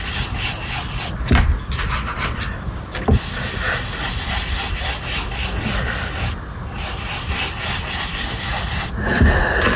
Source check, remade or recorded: recorded